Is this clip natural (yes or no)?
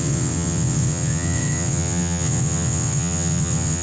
no